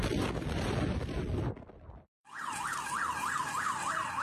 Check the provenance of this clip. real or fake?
real